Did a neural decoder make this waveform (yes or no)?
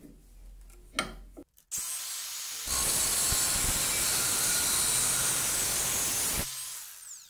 no